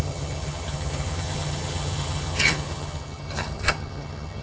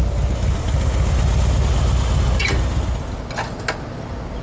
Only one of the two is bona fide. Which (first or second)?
second